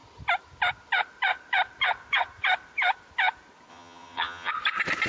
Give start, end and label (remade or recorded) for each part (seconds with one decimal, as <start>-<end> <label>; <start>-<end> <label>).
0.0-3.7 recorded; 3.7-4.5 remade; 4.5-5.1 recorded